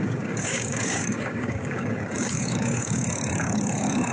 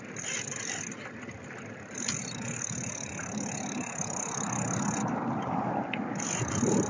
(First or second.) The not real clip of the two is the first